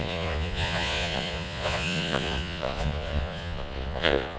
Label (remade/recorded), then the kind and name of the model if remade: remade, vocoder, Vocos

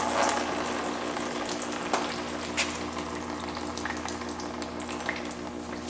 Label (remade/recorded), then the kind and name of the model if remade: recorded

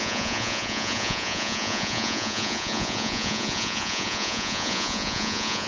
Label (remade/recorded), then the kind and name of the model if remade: remade, vocoder, Vocos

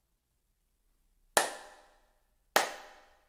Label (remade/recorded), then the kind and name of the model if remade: recorded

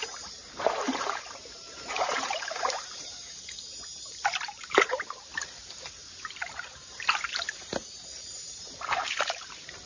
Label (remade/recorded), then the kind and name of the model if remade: remade, vocoder, BigVGAN v2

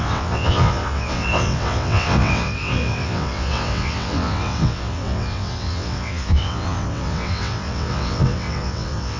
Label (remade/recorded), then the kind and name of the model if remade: remade, vocoder, WaveNeXt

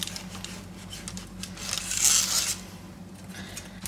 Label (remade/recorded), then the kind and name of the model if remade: recorded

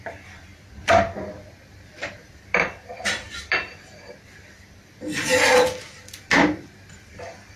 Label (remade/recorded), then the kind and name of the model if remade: remade, vocoder, BigVGAN v2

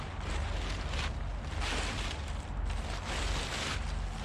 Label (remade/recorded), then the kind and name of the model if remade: recorded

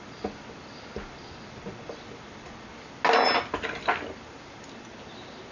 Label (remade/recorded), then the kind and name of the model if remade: recorded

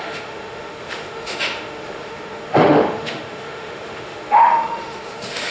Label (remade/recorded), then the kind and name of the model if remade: remade, autoencoder, DAC-VAE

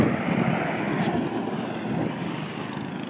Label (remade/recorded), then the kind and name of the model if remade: recorded